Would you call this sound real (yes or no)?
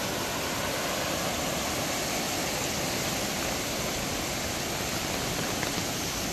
yes